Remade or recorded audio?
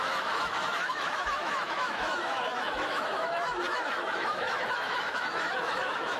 remade